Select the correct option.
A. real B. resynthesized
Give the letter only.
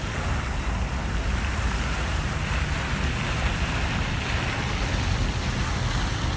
A